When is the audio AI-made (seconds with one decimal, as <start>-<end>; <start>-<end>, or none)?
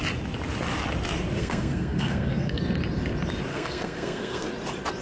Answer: 1.4-2.6; 3.5-4.5